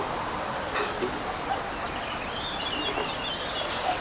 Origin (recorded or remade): recorded